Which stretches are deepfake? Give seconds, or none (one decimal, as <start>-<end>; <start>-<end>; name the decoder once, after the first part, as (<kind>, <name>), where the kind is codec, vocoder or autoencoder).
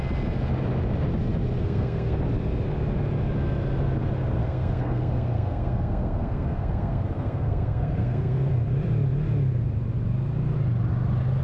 1.6-2.2 (codec, SNAC); 4.4-8.5